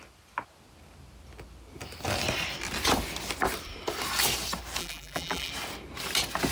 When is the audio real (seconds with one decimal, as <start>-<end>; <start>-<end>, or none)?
0.0-4.8; 5.5-6.5